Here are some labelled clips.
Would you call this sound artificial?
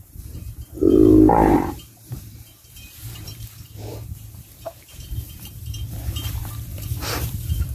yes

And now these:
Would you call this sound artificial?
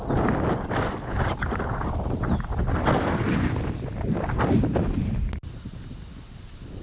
no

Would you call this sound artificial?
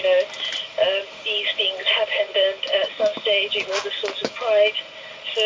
no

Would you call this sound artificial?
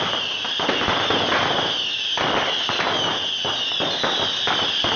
no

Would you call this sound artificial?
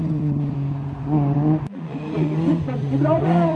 yes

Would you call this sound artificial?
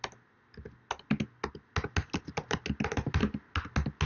no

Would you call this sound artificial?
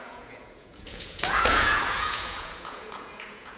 yes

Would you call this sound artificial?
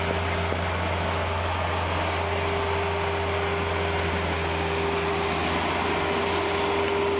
no